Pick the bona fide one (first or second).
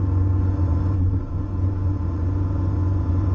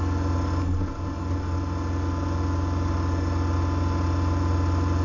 second